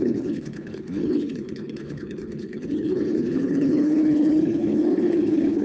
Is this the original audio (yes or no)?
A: no